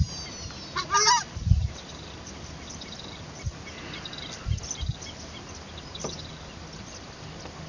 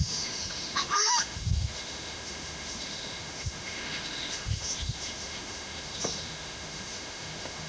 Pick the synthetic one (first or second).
second